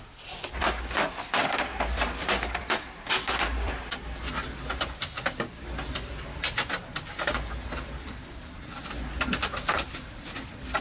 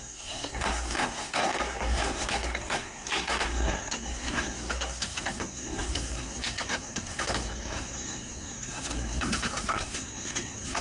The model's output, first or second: second